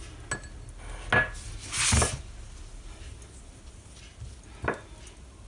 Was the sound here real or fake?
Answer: real